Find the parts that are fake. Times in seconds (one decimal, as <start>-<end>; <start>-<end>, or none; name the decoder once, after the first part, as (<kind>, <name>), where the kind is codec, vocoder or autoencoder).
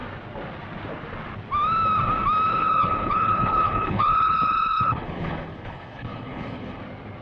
2.5-6.8 (codec, HILCodec)